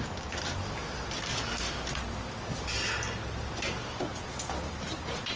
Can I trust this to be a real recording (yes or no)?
yes